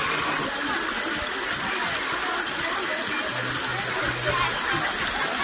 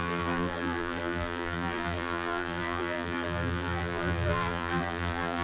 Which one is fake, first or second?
second